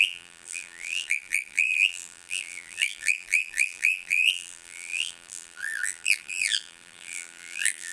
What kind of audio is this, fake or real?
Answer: fake